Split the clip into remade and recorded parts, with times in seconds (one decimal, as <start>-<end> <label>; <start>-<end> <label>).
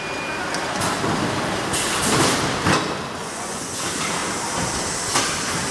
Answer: 0.0-3.2 recorded; 3.2-3.8 remade; 3.8-5.7 recorded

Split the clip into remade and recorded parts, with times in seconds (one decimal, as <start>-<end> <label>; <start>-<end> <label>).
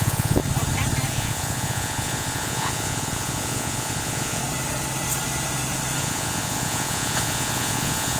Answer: 0.0-0.4 remade; 0.4-1.1 recorded; 1.1-4.4 remade; 4.4-6.0 recorded; 6.0-8.2 remade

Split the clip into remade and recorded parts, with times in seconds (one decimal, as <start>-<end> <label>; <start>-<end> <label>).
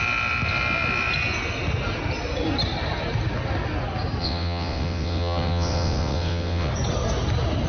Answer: 0.0-4.2 recorded; 4.2-6.7 remade; 6.7-7.7 recorded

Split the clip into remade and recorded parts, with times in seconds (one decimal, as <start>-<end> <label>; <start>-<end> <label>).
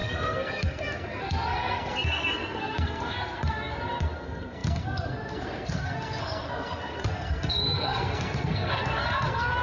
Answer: 0.0-9.6 remade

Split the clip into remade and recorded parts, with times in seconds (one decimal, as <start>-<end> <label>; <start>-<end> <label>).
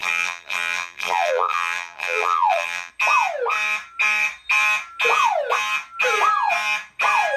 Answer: 0.0-2.9 remade; 2.9-7.4 recorded